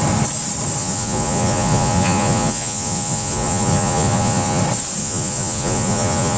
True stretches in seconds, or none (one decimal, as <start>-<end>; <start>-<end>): 0.0-0.8; 4.6-5.0